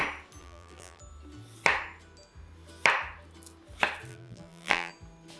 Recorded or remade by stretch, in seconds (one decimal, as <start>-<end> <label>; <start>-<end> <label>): 0.0-0.4 recorded; 0.4-1.0 remade; 1.0-4.1 recorded; 4.1-4.9 remade; 4.9-5.4 recorded

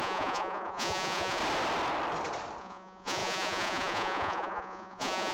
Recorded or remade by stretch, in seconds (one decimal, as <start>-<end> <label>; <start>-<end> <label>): 0.0-1.4 remade; 1.4-2.6 recorded; 2.6-5.3 remade

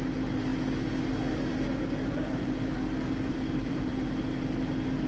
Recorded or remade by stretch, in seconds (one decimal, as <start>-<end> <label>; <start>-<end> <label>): 0.0-1.5 recorded; 1.5-3.9 remade; 3.9-5.1 recorded

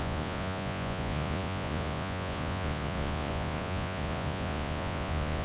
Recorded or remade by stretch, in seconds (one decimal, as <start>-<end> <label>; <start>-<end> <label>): 0.0-5.4 remade

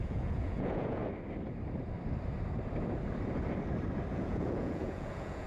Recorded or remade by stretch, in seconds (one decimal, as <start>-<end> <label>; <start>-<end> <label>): 0.0-1.0 remade; 1.0-4.1 recorded; 4.1-5.5 remade